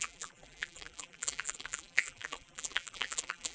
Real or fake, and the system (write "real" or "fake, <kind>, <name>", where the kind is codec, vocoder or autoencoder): fake, vocoder, BigVGAN v2